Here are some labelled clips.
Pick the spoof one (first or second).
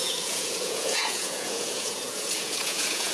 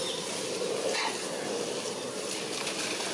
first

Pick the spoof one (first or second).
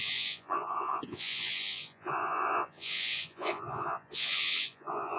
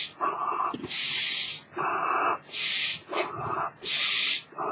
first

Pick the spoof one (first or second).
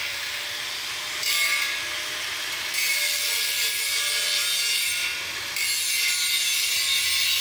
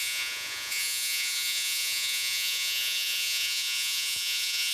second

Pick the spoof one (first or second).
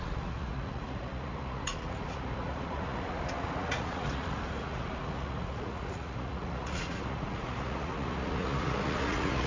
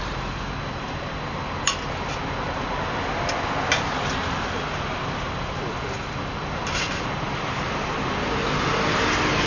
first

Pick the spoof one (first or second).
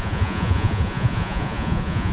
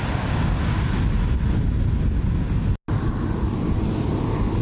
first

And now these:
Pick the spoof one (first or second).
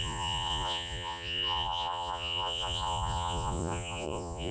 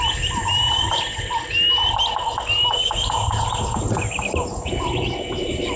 first